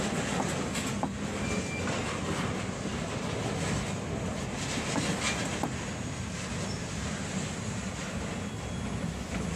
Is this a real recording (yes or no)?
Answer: yes